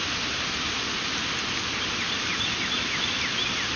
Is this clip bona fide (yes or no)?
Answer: yes